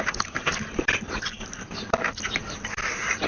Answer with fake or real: real